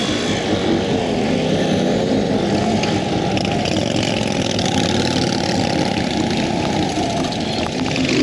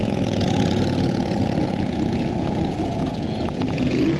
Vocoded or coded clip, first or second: second